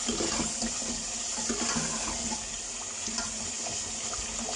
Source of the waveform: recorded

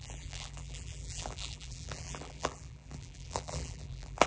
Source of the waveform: remade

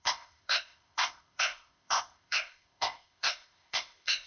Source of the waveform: remade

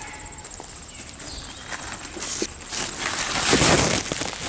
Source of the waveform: recorded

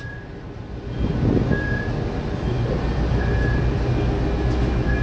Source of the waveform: recorded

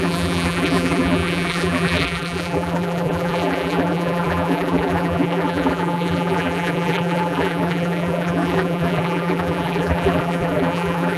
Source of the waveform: remade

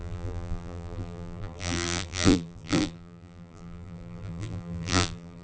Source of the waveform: remade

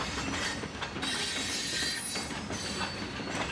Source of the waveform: recorded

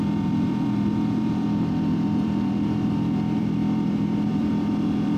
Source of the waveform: remade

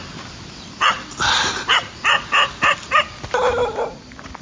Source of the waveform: recorded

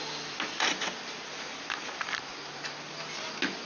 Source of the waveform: recorded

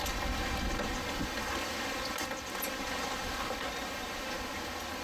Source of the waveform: recorded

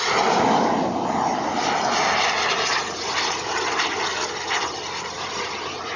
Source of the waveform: recorded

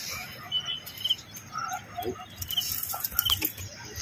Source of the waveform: recorded